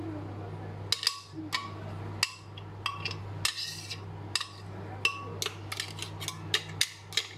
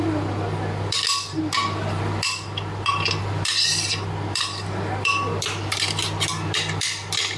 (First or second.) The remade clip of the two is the second